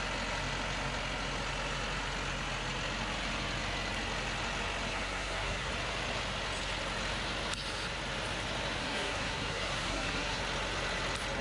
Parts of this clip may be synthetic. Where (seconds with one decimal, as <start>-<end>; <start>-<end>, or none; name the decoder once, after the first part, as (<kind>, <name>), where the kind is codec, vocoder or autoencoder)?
4.9-5.7 (codec, SNAC); 8.8-10.4